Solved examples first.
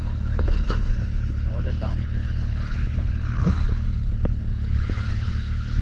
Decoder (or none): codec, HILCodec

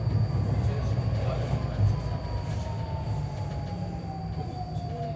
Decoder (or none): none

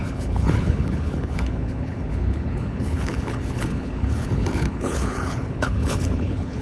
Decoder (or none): codec, HILCodec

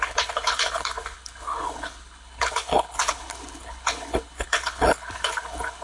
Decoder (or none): codec, HILCodec